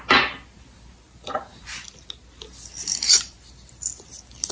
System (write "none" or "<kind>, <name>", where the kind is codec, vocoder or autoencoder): none